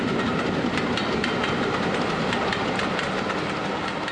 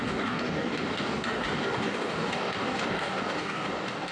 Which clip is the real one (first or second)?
first